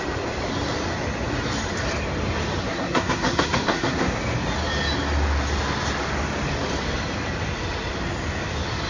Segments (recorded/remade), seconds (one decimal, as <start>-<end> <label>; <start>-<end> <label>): 0.0-2.6 recorded; 2.6-4.2 remade; 4.2-8.9 recorded